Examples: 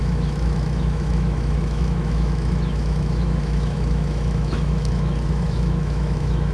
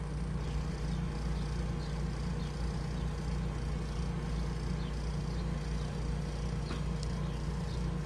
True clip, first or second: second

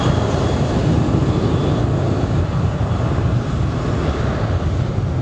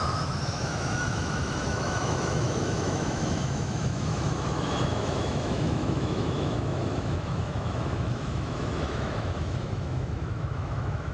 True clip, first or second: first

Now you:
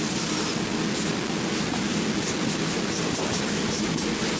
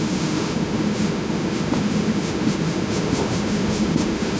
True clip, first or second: first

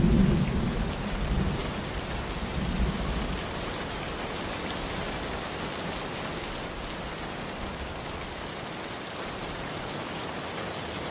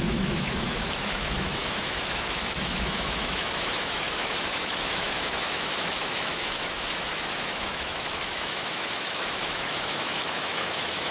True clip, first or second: first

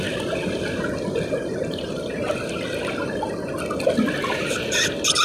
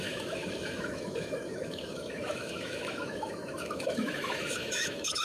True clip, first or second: first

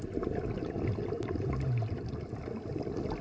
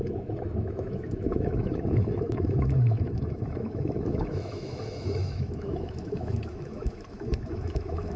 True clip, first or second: first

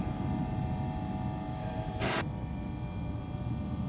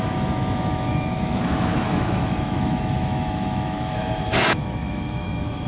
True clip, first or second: first